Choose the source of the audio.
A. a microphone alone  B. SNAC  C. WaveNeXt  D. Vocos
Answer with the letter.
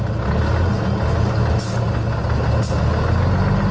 A